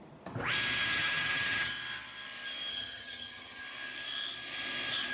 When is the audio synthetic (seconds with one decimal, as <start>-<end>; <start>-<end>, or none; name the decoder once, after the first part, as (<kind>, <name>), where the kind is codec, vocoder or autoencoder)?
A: 0.8-1.7 (vocoder, HiFi-GAN); 2.7-3.6